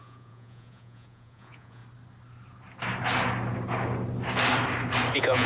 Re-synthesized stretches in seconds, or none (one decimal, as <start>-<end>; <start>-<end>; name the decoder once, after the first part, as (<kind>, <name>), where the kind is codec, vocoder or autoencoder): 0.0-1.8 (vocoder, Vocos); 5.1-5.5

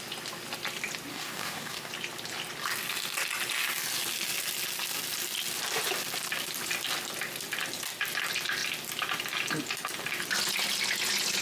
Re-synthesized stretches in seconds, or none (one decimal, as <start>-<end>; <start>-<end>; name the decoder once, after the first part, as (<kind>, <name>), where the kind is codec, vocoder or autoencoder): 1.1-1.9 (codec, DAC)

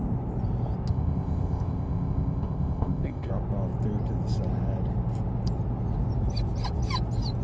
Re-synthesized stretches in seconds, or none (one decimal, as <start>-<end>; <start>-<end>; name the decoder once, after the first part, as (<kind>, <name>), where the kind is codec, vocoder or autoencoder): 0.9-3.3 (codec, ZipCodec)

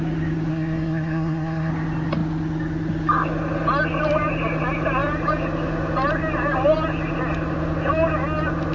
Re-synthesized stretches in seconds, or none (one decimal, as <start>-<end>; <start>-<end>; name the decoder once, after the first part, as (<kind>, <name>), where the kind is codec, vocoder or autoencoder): 0.5-1.7 (codec, SNAC)

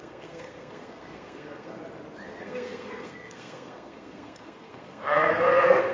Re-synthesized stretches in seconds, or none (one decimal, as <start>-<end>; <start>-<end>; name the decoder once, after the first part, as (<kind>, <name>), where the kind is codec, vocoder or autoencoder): 0.0-1.8 (codec, SNAC); 2.4-5.9

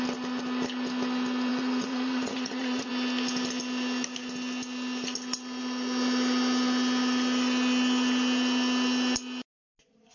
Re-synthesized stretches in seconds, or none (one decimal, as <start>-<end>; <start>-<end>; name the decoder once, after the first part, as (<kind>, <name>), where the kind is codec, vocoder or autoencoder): 1.5-2.9 (vocoder, Vocos)